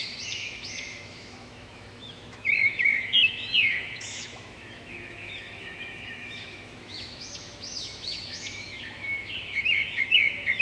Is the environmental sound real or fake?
fake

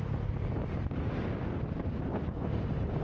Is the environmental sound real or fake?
real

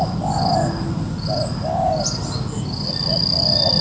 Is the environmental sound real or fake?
real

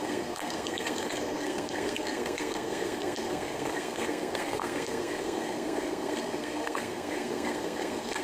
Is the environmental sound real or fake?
fake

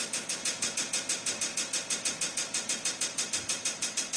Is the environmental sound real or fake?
real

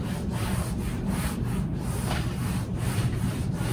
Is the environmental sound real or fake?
fake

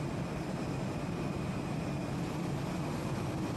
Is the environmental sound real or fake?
real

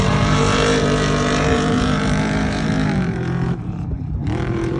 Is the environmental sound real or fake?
fake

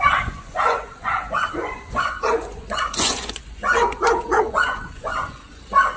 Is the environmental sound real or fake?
fake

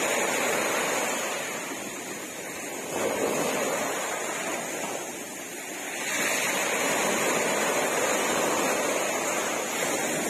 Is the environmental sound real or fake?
real